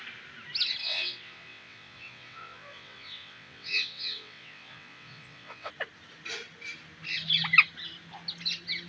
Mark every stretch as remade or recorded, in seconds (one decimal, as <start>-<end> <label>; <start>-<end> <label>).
0.0-0.8 recorded; 0.8-5.7 remade; 5.7-8.9 recorded